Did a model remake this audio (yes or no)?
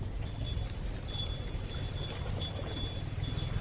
no